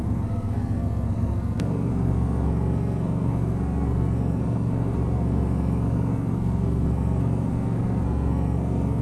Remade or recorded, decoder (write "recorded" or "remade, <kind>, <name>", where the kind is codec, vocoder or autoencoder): remade, codec, SNAC